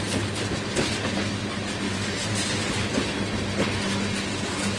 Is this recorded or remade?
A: recorded